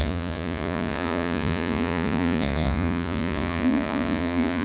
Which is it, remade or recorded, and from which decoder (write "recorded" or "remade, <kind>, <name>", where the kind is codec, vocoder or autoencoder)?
remade, vocoder, Vocos